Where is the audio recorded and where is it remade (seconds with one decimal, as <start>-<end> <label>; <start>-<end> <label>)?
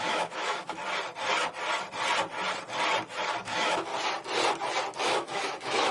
0.0-0.8 remade; 0.8-3.4 recorded; 3.4-3.9 remade; 3.9-5.0 recorded; 5.0-5.9 remade